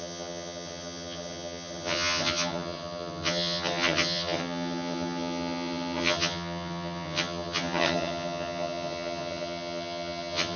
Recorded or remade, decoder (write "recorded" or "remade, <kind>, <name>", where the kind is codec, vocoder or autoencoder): remade, vocoder, HiFi-GAN